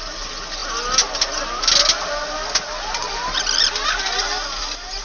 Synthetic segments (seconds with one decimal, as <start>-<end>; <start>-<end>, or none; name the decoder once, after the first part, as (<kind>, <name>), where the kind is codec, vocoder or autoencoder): none